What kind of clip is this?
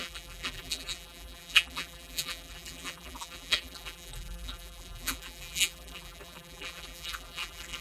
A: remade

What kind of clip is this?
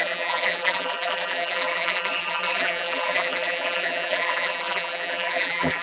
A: remade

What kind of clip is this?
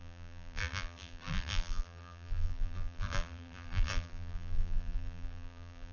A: remade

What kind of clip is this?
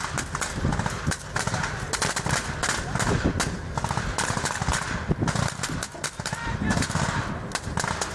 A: recorded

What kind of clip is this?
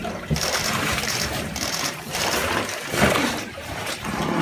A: remade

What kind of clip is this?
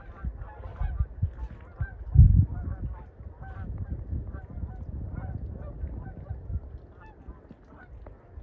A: recorded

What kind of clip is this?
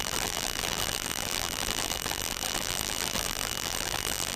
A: remade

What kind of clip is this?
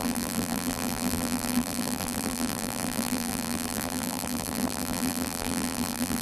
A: remade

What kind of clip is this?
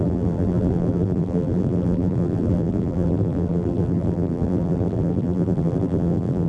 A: remade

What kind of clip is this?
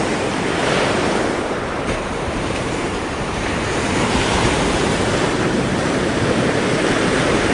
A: remade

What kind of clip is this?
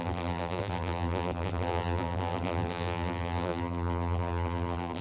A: remade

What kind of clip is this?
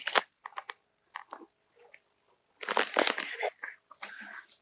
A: recorded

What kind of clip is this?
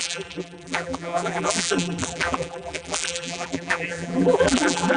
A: remade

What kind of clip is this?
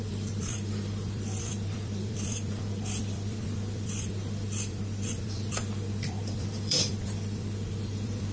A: remade